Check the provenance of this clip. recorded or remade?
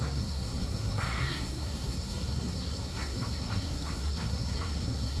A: remade